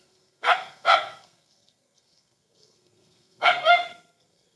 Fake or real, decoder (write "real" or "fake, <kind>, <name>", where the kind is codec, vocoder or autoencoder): fake, codec, SNAC